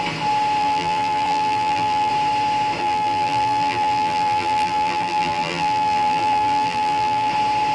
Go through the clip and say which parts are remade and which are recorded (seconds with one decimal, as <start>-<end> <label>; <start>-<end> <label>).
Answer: 0.0-0.6 recorded; 0.6-2.1 remade; 2.1-2.8 recorded; 2.8-7.3 remade; 7.3-7.7 recorded